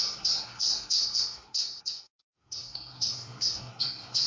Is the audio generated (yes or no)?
yes